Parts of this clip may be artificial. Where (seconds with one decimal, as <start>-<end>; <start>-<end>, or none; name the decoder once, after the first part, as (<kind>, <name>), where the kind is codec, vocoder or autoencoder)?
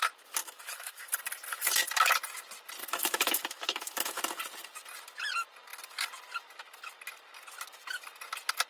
0.4-1.1 (autoencoder, DAC-VAE); 2.8-4.2